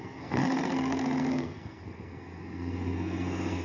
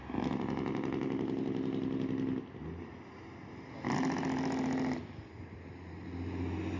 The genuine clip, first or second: second